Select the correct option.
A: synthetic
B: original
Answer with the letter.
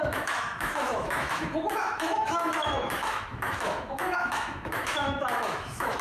A